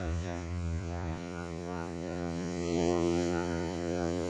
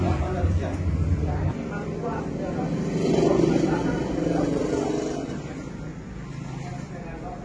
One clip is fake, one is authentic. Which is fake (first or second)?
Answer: first